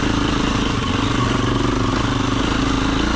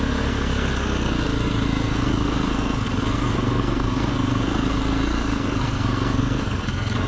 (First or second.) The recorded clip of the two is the first